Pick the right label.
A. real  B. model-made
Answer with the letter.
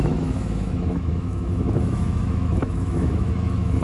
B